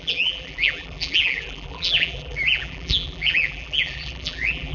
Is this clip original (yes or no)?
no